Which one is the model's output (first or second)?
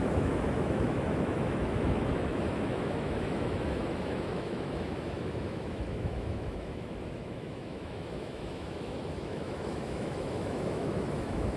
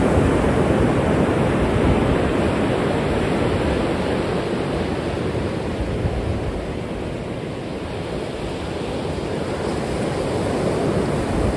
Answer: first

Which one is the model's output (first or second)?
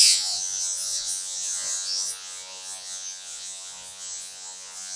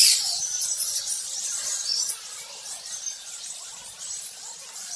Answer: first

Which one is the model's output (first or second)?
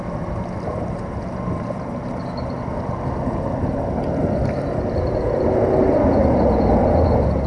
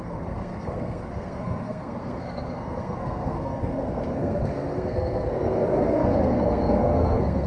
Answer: second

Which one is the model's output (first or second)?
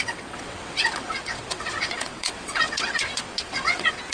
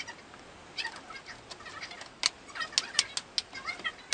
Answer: first